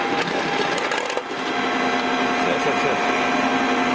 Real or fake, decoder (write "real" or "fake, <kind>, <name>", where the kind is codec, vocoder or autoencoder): real